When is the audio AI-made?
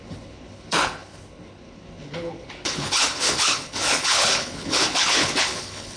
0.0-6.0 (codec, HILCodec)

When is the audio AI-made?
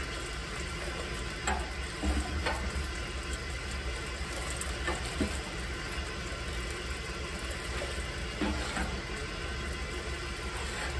none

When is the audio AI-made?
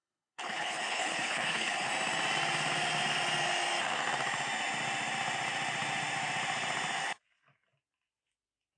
0.0-1.9 (codec, HILCodec)